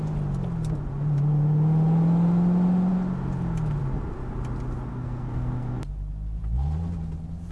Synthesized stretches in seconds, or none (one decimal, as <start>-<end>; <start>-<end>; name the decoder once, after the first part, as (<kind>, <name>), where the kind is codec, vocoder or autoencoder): 4.9-5.8 (codec, SNAC)